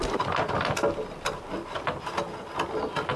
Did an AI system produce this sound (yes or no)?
no